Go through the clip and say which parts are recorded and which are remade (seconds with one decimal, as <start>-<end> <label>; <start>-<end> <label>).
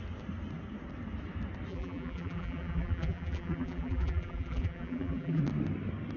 0.0-1.7 recorded; 1.7-5.4 remade; 5.4-6.2 recorded